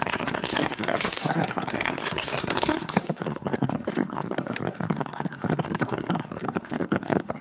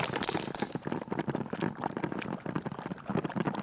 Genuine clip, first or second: second